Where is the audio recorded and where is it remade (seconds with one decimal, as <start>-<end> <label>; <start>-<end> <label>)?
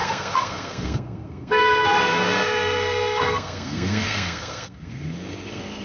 0.0-5.8 remade